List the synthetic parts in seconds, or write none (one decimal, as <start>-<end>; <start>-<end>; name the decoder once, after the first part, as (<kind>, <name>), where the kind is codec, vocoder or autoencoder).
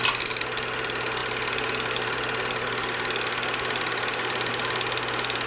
none